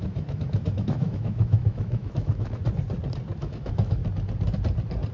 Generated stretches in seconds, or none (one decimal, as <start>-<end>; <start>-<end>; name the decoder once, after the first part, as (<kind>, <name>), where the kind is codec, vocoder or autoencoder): 0.0-2.6 (autoencoder, DAC-VAE); 3.4-4.0